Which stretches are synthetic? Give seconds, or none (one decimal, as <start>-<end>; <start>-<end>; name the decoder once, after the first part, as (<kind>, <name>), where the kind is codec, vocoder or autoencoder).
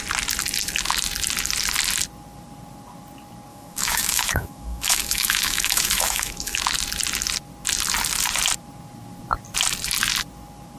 3.5-6.6 (autoencoder, DAC-VAE)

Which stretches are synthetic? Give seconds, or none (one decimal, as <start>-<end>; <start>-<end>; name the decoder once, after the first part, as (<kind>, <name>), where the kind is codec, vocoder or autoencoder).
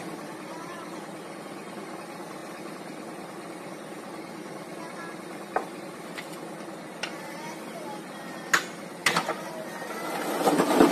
none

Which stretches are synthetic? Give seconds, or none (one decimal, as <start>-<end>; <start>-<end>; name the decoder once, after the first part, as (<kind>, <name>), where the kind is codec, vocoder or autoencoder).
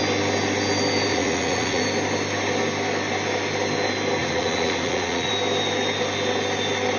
1.1-1.8 (vocoder, Vocos); 4.2-5.3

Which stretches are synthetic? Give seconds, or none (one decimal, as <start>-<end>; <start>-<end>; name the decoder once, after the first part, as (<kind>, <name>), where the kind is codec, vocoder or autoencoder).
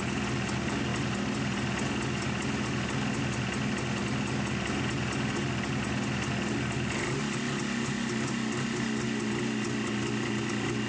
none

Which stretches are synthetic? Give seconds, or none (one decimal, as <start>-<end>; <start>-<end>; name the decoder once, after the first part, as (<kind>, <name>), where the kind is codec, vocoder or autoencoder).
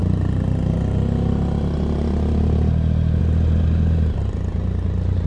none